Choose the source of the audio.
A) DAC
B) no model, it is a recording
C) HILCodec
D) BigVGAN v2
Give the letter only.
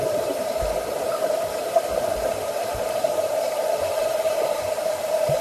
D